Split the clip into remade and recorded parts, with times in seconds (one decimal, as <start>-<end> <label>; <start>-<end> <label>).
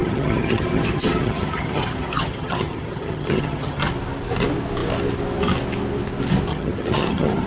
0.0-3.9 remade; 3.9-6.5 recorded; 6.5-7.5 remade